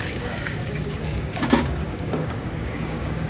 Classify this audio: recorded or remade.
remade